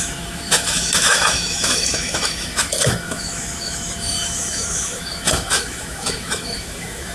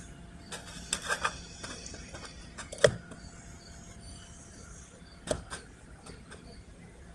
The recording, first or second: second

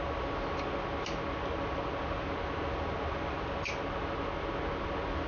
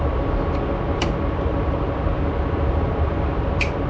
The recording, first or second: first